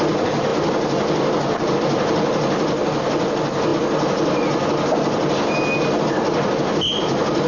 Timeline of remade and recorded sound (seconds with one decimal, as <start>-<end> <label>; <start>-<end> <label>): 0.0-7.5 recorded